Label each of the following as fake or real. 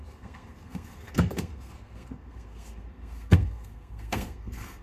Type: fake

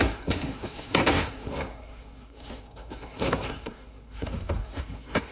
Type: fake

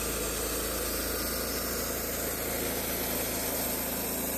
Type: real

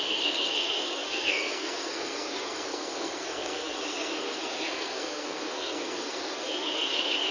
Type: fake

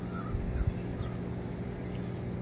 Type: real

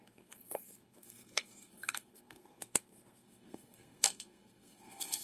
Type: fake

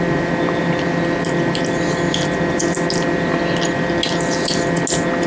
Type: real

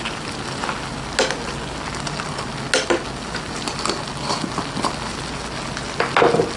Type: real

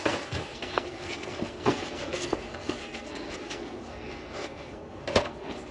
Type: fake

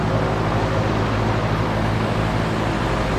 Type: real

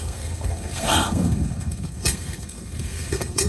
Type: fake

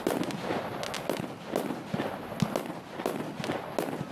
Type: real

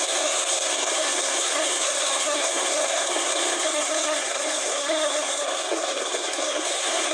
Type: fake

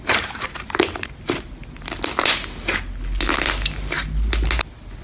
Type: real